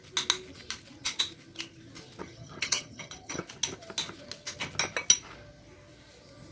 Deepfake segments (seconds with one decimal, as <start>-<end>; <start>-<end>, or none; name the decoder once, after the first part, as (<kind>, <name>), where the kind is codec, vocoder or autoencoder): 2.2-3.4 (vocoder, HiFi-GAN)